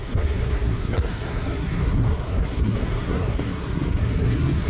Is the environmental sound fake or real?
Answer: fake